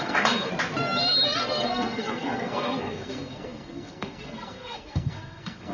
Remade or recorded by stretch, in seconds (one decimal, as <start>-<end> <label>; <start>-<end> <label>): 0.0-0.5 remade; 0.5-1.4 recorded; 1.4-5.7 remade